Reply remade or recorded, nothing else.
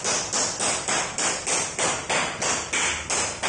recorded